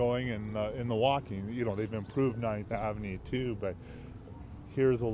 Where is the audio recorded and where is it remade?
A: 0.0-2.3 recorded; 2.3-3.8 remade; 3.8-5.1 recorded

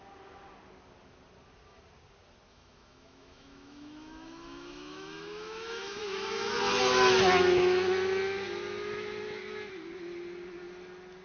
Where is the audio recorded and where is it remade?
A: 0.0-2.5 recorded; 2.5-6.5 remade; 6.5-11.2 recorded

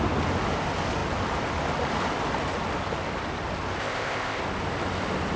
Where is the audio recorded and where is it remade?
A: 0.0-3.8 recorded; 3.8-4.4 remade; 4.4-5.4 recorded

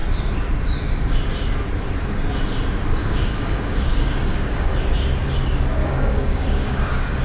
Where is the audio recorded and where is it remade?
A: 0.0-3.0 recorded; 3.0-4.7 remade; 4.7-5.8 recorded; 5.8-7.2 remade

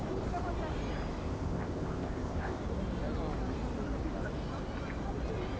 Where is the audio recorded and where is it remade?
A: 0.0-1.2 recorded; 1.2-2.6 remade; 2.6-5.6 recorded